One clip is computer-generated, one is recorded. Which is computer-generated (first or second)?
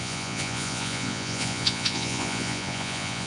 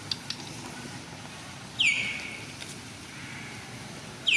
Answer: first